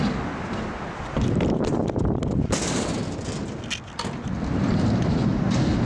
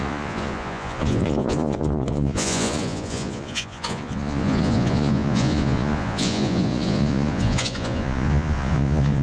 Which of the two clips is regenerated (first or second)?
second